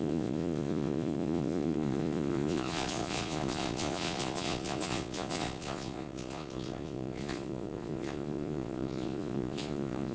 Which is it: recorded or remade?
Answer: remade